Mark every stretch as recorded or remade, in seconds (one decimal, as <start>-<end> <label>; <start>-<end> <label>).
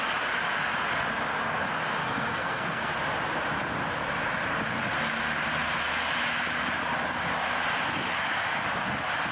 0.0-2.0 recorded; 2.0-2.9 remade; 2.9-9.3 recorded